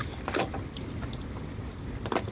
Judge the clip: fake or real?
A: real